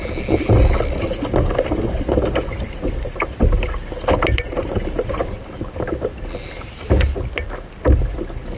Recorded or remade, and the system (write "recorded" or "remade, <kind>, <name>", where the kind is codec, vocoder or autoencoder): recorded